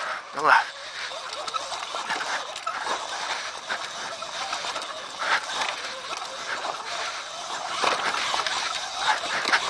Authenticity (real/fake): real